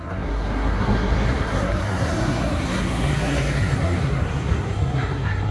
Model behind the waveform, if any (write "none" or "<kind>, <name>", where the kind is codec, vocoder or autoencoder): codec, SNAC